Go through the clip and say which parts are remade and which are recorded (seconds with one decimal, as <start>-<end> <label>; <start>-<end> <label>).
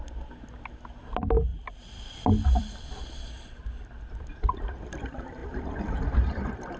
0.0-6.8 remade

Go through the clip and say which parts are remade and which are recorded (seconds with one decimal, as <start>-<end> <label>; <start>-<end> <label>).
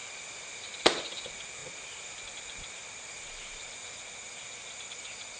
0.0-1.6 recorded; 1.6-4.1 remade; 4.1-5.4 recorded